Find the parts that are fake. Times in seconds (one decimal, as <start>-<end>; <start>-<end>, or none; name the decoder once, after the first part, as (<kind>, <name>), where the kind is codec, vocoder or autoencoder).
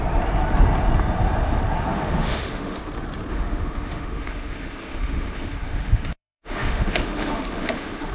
1.9-2.8 (autoencoder, DAC-VAE); 3.3-8.1